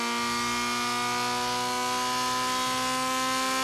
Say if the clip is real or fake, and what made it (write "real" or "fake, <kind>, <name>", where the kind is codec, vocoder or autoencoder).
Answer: real